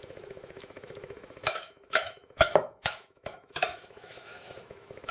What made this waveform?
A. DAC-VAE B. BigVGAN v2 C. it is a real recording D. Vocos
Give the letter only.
A